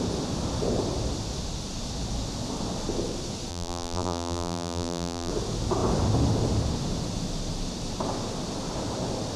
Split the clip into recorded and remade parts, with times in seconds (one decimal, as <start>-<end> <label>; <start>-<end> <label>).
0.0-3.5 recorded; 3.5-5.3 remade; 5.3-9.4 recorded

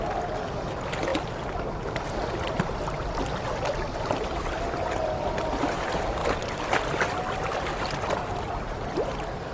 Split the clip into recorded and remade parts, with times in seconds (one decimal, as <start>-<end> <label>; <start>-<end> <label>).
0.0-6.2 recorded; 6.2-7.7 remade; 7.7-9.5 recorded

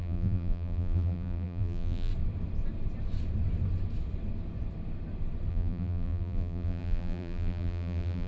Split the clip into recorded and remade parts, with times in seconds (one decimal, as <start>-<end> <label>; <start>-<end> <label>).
0.0-2.1 remade; 2.1-5.5 recorded; 5.5-8.3 remade

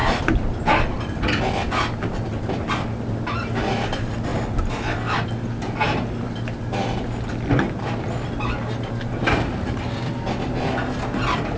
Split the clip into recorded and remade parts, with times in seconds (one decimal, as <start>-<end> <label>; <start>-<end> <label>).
0.0-1.4 remade; 1.4-11.6 recorded